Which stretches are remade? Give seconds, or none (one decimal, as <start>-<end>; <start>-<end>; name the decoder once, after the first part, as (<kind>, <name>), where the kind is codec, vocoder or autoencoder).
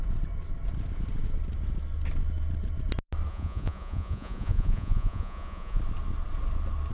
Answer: 3.3-5.8 (vocoder, Vocos)